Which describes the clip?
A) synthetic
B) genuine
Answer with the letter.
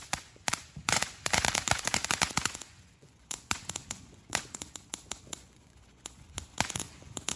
A